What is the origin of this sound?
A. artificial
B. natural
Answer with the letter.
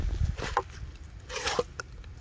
B